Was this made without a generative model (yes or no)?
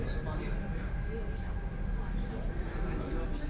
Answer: yes